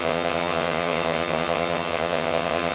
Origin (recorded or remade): remade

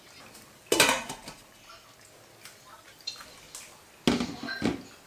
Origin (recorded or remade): recorded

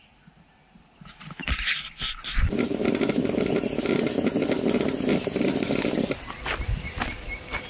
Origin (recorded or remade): recorded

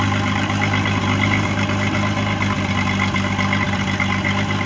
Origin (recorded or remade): recorded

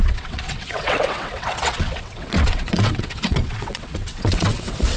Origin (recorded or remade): remade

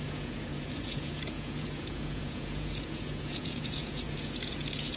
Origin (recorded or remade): remade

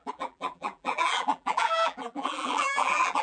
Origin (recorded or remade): remade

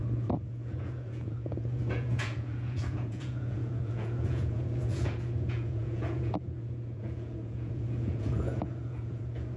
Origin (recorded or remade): remade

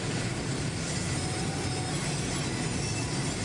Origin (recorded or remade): recorded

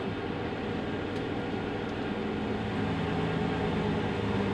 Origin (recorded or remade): recorded